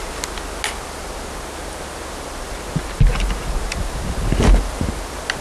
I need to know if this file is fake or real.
real